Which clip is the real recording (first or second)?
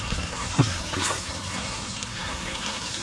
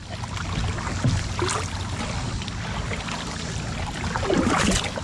second